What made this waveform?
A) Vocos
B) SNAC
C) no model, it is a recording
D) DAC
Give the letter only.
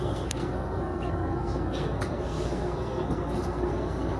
B